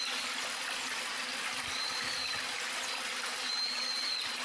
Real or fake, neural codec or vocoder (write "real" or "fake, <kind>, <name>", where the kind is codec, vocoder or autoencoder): real